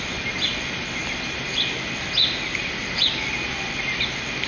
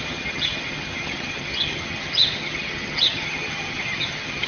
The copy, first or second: second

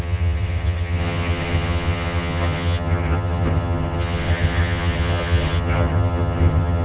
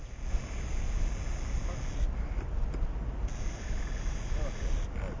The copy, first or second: first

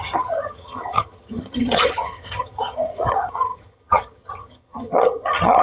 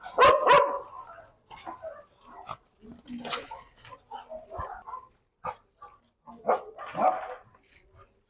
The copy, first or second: first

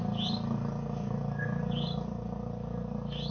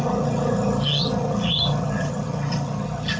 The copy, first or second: second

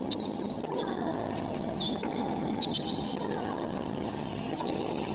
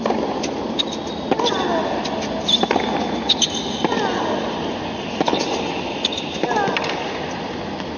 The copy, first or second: first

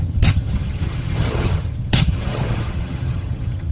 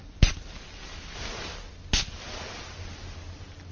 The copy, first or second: first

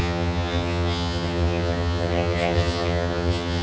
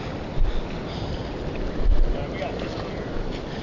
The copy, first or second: first